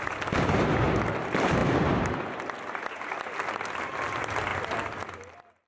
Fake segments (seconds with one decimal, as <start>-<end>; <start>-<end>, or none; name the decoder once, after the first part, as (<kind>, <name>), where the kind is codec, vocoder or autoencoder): 1.6-3.9 (vocoder, BigVGAN v2); 4.5-5.7

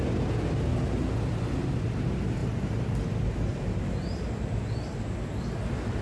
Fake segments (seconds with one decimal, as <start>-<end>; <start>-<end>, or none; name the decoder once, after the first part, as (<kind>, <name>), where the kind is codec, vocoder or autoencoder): none

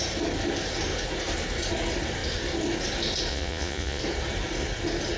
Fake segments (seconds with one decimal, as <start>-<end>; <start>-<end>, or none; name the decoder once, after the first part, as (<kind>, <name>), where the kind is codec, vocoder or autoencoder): 3.3-4.0 (vocoder, Vocos)

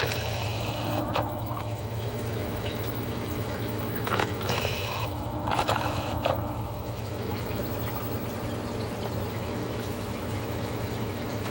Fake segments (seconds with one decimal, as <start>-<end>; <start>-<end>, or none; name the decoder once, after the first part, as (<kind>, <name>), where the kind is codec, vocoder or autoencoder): 0.0-7.6 (autoencoder, DAC-VAE); 9.3-11.5